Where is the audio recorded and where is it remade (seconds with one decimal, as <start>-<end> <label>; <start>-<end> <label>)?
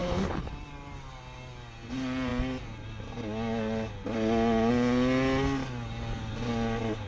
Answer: 0.0-0.5 remade; 0.5-7.1 recorded